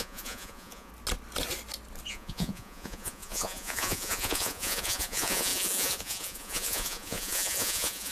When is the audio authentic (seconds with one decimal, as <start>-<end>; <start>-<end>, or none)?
0.9-2.1